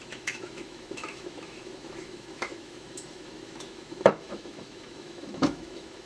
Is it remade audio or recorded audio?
remade